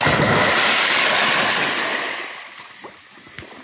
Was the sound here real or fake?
real